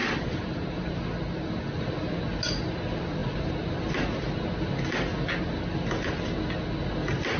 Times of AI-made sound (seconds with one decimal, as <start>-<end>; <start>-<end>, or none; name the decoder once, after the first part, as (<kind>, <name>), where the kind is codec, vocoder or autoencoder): 0.0-1.8 (vocoder, BigVGAN v2); 3.2-3.9